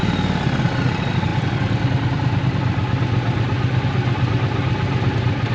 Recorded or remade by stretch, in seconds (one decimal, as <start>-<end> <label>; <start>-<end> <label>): 0.0-5.5 recorded